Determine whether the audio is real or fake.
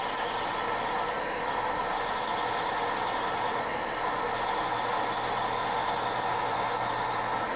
real